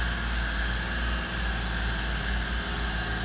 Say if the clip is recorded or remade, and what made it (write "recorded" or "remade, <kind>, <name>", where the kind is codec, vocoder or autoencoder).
recorded